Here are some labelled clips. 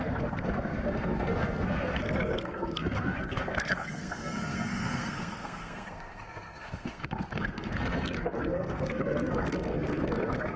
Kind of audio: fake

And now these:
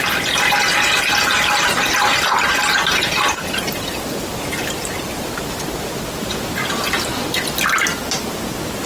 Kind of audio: real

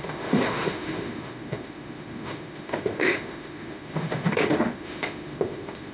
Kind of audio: fake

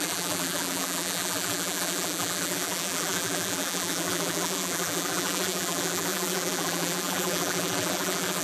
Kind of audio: fake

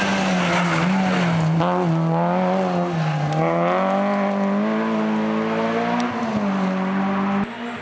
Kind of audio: real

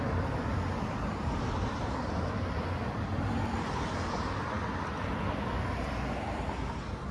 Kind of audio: real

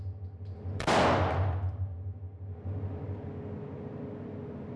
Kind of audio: real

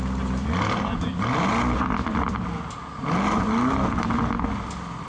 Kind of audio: real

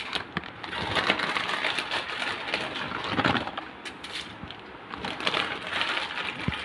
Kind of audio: fake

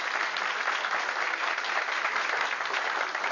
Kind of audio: real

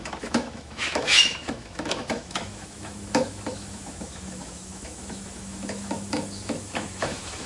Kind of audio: fake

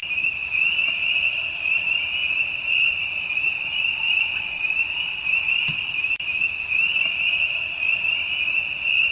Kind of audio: fake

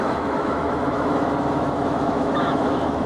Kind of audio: fake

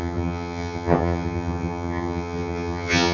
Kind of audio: fake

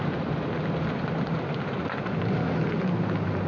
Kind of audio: real